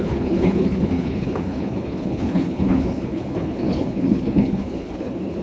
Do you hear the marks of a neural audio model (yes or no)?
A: yes